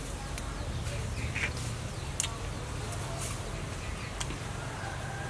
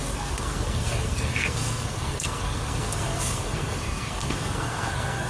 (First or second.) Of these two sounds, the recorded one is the first